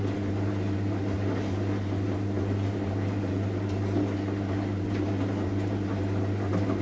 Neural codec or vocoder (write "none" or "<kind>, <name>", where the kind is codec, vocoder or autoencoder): none